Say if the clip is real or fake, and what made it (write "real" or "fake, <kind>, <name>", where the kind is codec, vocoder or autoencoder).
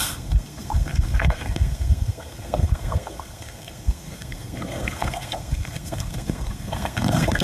fake, codec, SNAC